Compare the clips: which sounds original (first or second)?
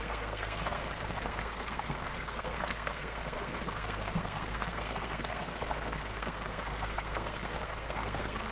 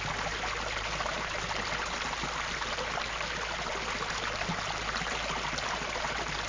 second